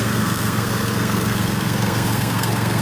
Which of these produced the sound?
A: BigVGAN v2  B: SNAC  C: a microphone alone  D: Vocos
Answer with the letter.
B